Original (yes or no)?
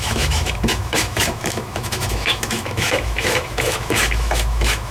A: no